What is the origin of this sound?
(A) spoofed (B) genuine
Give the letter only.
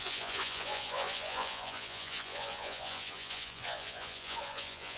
A